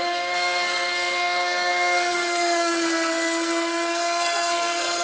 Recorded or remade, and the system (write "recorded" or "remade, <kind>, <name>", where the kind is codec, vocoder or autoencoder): remade, codec, SNAC